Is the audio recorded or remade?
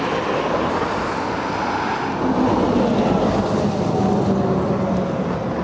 recorded